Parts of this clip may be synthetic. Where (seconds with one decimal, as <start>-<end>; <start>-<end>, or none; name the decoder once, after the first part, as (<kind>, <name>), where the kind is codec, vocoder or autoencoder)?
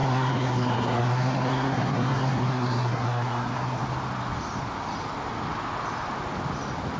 0.0-3.8 (codec, SNAC)